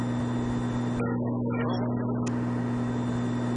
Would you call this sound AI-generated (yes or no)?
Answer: no